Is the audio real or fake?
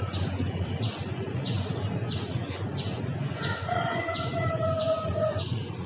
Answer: fake